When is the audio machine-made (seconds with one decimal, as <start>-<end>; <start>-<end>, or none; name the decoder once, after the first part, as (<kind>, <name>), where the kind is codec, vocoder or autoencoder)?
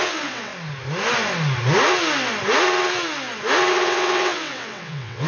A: 0.0-0.5 (vocoder, WaveNeXt); 3.7-5.3